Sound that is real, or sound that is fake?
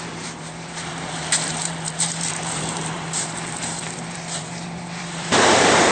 fake